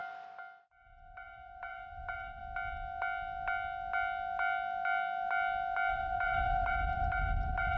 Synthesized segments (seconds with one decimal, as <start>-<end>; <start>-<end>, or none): 0.6-2.4; 5.9-7.8